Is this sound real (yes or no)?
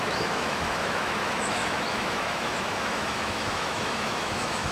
no